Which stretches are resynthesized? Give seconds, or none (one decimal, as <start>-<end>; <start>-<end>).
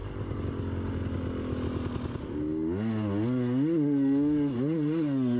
none